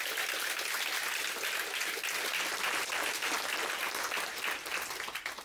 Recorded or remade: recorded